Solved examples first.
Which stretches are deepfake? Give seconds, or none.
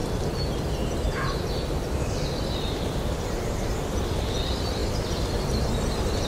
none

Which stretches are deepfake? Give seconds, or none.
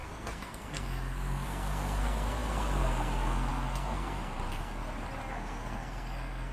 0.0-4.8 (codec, SNAC); 5.3-6.5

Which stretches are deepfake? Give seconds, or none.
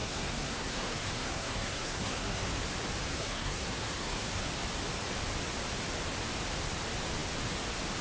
0.0-2.5 (codec, SNAC); 3.1-4.4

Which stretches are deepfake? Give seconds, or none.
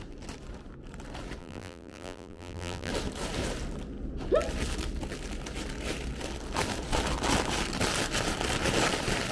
1.4-2.9 (vocoder, BigVGAN v2)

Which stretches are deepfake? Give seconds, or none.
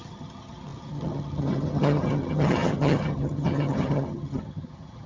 0.0-5.1 (vocoder, HiFi-GAN)